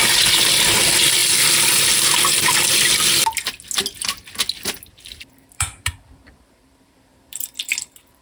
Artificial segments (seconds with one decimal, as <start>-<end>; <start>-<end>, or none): 0.0-1.2; 4.9-8.2